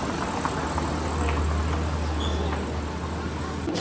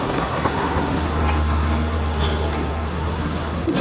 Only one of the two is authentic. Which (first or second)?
first